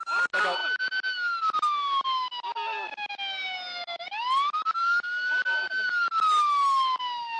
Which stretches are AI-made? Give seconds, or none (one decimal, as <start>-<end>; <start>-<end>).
none